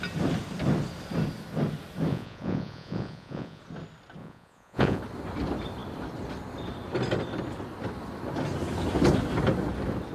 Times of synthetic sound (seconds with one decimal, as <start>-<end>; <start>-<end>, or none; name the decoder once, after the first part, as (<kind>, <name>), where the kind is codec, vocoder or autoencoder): 2.1-3.6 (vocoder, Vocos); 4.2-5.0